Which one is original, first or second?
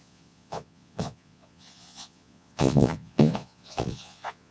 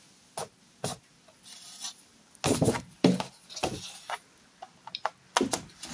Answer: second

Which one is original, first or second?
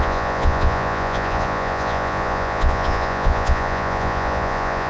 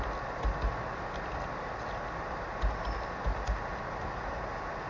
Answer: second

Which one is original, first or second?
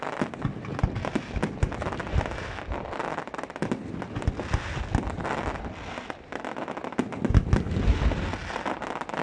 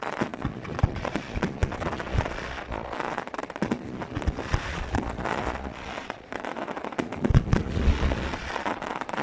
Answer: first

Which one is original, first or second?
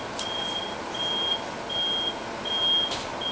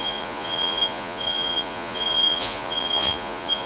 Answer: first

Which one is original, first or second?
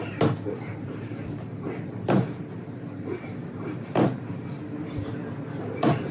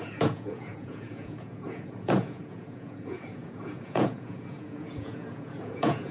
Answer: first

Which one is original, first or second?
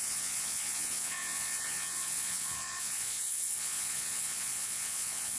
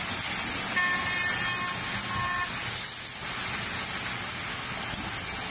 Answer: second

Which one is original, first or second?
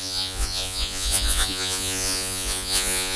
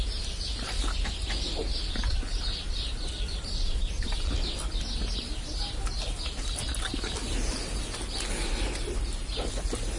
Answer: second